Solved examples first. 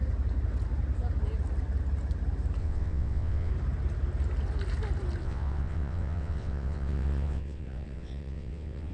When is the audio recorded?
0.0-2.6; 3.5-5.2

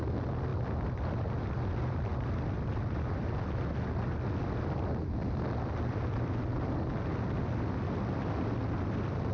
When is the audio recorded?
0.0-9.3

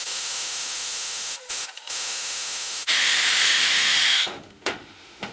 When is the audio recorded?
none